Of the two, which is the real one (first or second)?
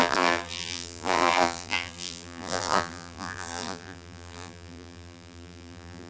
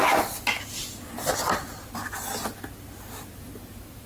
second